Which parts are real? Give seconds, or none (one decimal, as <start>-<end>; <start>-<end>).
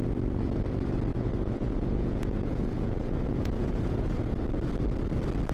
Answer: 0.0-1.1; 4.4-5.5